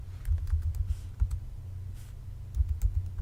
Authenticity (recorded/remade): recorded